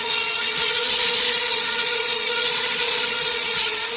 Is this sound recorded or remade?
remade